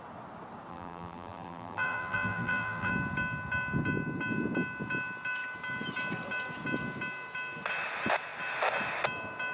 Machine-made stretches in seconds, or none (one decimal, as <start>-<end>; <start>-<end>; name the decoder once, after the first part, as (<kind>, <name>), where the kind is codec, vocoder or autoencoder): 0.7-2.9 (vocoder, BigVGAN v2)